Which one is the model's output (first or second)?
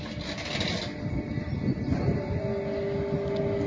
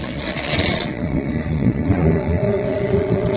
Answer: second